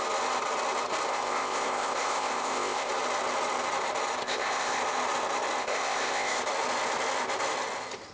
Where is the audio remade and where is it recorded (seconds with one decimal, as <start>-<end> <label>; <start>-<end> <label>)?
0.0-1.1 recorded; 1.1-2.9 remade; 2.9-4.2 recorded; 4.2-4.8 remade; 4.8-5.6 recorded; 5.6-6.4 remade; 6.4-8.1 recorded